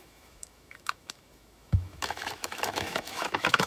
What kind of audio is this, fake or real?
fake